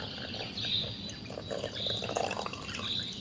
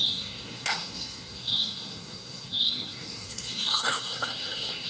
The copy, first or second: second